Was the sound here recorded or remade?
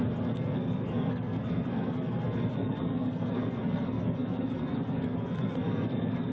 remade